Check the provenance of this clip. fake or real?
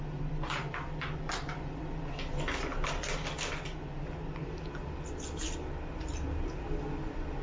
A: real